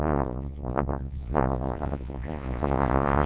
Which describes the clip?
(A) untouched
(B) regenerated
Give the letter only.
B